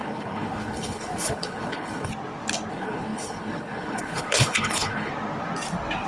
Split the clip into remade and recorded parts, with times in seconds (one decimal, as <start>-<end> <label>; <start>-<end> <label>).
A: 0.0-2.1 remade; 2.1-2.7 recorded; 2.7-5.1 remade; 5.1-6.1 recorded